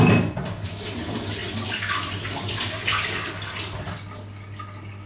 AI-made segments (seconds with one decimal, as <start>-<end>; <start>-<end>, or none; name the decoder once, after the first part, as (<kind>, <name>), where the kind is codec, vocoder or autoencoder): none